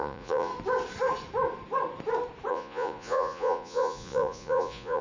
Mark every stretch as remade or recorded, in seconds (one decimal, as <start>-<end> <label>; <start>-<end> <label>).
0.0-0.5 remade; 0.5-2.5 recorded; 2.5-5.0 remade